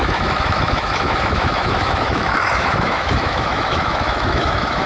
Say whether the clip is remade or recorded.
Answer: remade